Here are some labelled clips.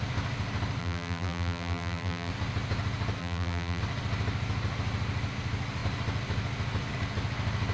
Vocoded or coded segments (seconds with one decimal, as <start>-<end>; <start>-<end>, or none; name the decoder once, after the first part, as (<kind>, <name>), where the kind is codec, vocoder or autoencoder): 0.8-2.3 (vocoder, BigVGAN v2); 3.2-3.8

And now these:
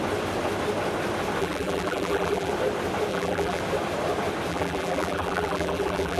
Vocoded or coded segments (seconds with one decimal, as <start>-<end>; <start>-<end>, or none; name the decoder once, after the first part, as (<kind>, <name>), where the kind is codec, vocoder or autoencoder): 1.4-2.5 (vocoder, BigVGAN v2); 3.1-3.6; 4.5-6.2

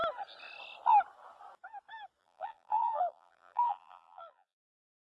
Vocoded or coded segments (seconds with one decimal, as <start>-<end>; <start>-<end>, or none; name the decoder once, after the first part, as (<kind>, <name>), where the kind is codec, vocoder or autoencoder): 2.2-5.0 (vocoder, BigVGAN v2)

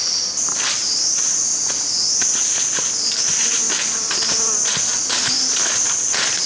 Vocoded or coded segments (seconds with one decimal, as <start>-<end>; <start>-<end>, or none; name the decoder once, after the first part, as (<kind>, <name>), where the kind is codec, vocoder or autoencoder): none

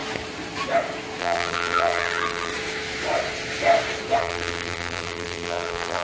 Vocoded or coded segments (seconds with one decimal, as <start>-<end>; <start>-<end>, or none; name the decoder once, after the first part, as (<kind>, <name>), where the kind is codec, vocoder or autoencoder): 1.2-2.5 (vocoder, BigVGAN v2); 4.2-6.0

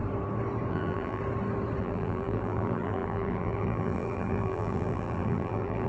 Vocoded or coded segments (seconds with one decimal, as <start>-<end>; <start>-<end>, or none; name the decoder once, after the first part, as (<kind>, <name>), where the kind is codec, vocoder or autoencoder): 0.7-1.2 (vocoder, BigVGAN v2); 1.8-5.9

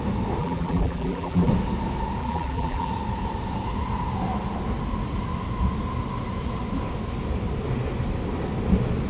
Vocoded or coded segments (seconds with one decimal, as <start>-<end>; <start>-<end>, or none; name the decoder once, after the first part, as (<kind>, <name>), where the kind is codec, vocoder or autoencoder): 0.4-1.5 (vocoder, BigVGAN v2); 2.2-2.9